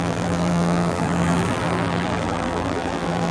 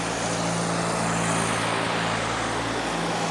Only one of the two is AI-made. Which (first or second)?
first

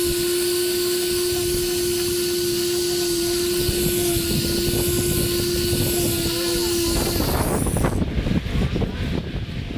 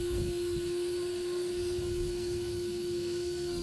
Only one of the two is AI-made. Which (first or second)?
second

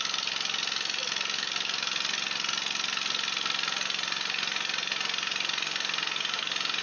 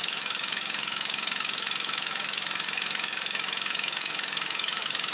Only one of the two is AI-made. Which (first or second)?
second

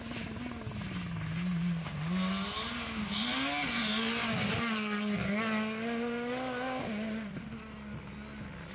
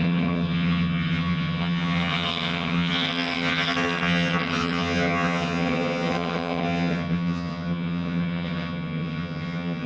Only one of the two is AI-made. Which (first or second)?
second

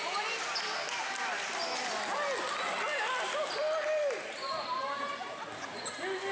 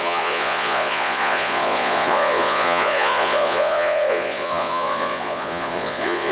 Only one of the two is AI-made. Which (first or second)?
second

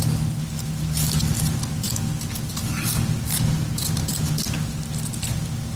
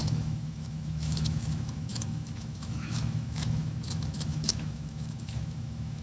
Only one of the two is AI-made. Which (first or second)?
second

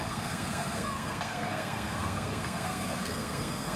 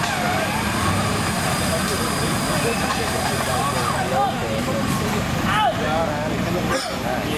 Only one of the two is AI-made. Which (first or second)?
first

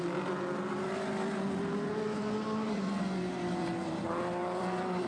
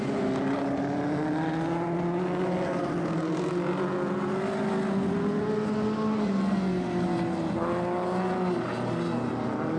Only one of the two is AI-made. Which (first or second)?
first